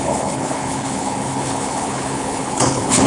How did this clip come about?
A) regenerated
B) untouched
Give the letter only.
A